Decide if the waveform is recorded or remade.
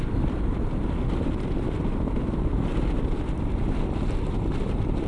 recorded